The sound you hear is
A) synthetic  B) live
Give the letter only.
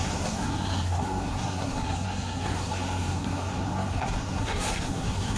A